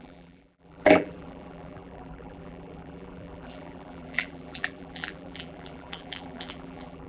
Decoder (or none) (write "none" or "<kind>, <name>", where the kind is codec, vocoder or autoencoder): vocoder, BigVGAN v2